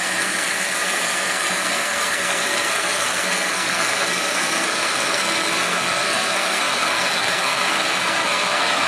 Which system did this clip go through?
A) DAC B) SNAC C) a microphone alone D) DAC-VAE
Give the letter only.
B